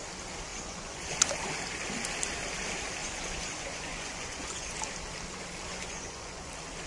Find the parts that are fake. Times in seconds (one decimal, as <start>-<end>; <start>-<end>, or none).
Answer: 0.5-1.2; 3.0-4.7; 5.7-6.5